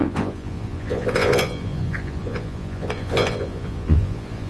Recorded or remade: remade